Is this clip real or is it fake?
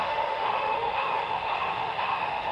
fake